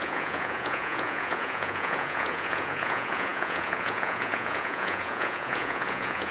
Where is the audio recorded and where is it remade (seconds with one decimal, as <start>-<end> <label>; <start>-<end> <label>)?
0.0-6.3 remade